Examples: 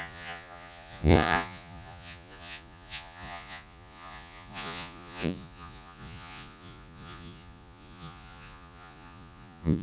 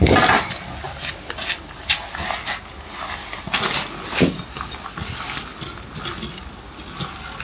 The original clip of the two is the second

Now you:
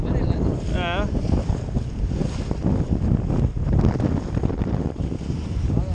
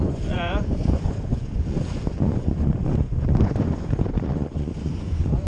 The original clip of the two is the first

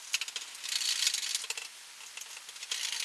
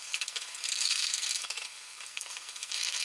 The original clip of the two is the first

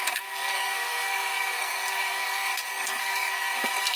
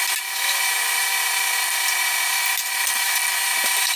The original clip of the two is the second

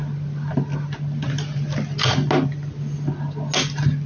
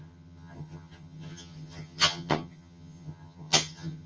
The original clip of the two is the first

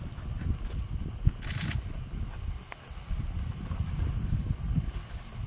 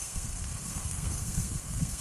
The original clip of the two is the first